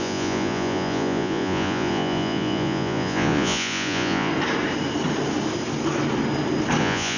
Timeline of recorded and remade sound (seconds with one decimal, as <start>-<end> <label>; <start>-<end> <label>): 0.0-4.3 remade; 4.3-6.8 recorded; 6.8-7.2 remade